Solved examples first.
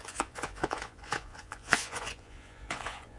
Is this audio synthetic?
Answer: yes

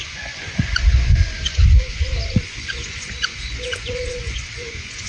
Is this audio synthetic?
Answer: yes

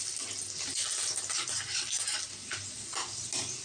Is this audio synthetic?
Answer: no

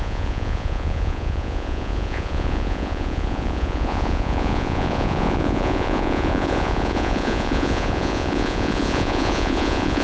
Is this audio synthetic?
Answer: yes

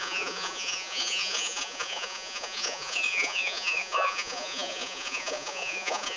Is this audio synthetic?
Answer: yes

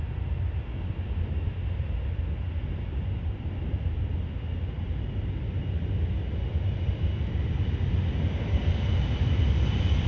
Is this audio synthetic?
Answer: no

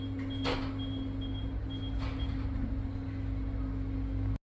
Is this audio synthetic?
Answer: no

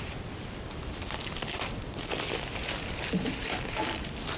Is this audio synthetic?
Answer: no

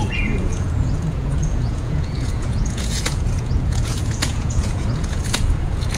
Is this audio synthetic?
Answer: yes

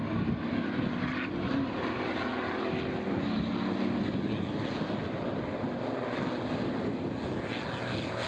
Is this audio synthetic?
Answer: no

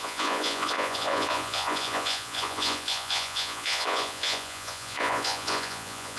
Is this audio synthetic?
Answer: yes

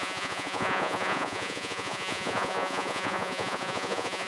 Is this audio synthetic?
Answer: yes